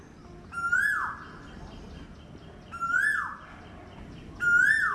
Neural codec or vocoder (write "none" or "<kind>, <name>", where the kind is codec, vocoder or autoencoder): none